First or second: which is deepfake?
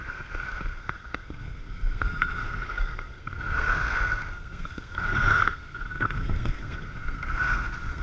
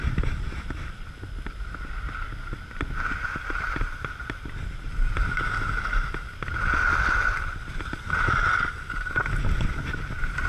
first